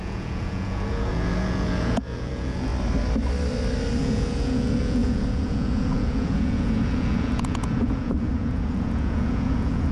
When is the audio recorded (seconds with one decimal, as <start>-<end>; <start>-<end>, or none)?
2.7-4.0